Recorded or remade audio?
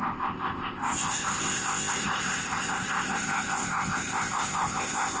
remade